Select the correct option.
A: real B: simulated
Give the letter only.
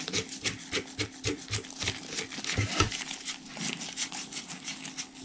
A